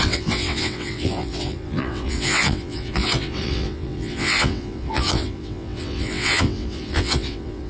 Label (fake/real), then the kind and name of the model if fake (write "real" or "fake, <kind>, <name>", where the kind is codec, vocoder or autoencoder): fake, vocoder, WaveNeXt